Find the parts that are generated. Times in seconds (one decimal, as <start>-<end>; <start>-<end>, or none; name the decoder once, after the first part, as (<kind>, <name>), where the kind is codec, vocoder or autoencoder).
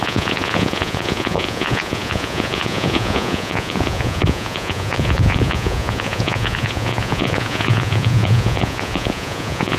0.0-9.8 (vocoder, Vocos)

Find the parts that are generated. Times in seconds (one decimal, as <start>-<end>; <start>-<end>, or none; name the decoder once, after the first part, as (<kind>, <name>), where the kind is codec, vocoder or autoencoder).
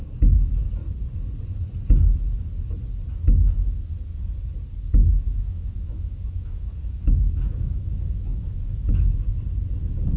5.0-9.3 (autoencoder, DAC-VAE)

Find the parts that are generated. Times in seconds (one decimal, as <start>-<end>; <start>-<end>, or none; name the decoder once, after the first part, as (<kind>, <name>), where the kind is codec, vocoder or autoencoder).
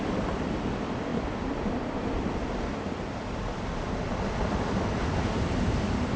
none